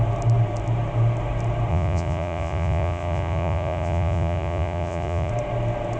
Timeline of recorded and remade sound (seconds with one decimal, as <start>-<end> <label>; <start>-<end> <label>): 0.0-1.7 recorded; 1.7-5.3 remade; 5.3-6.0 recorded